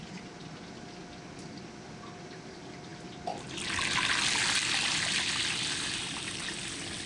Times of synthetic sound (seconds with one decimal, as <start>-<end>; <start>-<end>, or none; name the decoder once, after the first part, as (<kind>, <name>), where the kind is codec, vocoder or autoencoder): 2.9-3.6 (vocoder, BigVGAN v2)